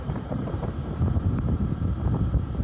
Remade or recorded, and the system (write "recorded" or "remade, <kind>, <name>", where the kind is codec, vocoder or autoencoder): remade, vocoder, BigVGAN v2